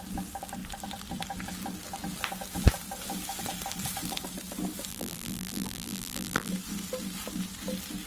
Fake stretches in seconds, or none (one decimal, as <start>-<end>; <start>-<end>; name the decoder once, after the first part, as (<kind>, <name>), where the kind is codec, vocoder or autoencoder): 4.9-6.5 (vocoder, BigVGAN v2)